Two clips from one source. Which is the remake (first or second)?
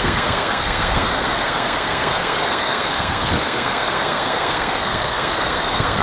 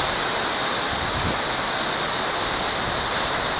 first